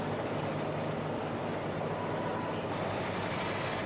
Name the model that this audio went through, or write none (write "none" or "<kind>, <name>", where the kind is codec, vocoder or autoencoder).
none